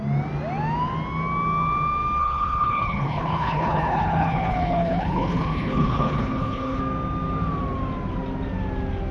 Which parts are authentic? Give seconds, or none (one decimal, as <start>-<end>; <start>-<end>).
0.0-2.2; 6.8-9.1